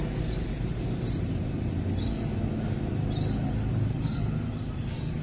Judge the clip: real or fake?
real